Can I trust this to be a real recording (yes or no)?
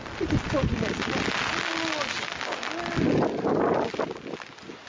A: yes